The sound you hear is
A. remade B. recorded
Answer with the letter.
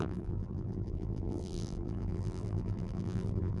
A